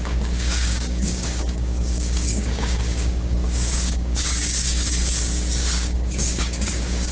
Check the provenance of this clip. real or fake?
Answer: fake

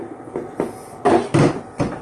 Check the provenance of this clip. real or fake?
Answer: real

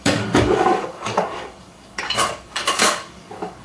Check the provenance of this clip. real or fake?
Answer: fake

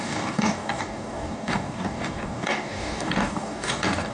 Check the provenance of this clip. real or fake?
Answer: fake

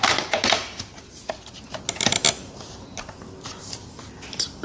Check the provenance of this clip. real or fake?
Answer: real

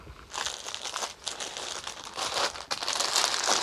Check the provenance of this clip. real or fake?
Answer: real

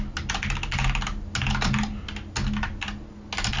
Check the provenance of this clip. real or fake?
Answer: real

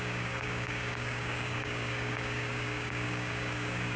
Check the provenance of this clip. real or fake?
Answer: fake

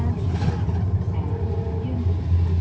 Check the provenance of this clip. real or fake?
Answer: real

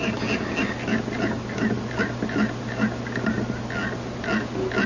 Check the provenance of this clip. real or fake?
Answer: real